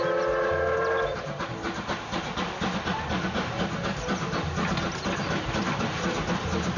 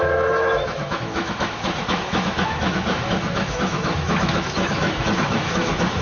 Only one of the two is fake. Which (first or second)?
second